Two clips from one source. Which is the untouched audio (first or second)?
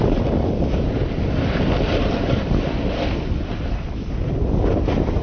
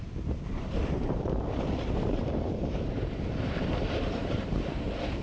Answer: first